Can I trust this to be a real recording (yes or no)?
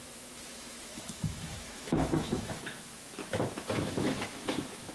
no